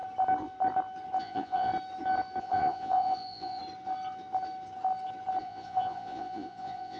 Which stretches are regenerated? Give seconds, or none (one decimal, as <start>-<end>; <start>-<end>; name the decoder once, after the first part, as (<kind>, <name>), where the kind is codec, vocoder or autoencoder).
1.2-1.7 (vocoder, Vocos); 2.4-3.6; 5.4-7.0

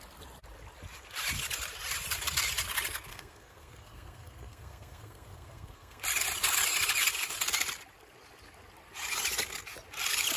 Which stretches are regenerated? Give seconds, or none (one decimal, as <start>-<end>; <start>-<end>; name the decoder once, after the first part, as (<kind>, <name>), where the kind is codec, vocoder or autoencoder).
3.1-6.0 (codec, SNAC)

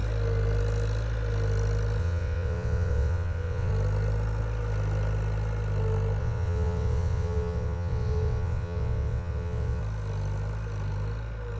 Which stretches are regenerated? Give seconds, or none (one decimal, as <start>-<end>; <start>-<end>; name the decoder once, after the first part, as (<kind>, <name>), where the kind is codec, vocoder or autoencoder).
2.0-3.7 (vocoder, WaveNeXt); 6.2-9.8

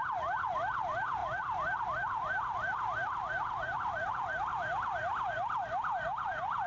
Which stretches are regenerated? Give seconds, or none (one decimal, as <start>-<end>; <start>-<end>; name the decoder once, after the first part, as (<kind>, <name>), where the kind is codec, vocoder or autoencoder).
none

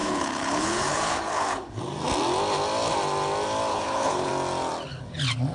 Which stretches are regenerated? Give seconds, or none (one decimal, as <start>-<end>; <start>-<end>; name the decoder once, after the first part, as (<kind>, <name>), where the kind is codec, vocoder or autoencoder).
0.0-1.8 (codec, HILCodec); 3.7-4.3

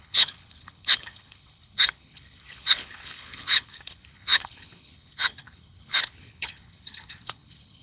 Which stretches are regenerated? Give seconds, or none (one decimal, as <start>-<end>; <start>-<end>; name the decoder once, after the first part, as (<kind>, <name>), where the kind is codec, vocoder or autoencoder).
0.0-7.8 (codec, HILCodec)